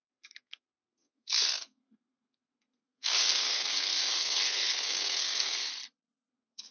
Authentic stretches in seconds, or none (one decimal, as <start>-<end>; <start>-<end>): 5.7-6.3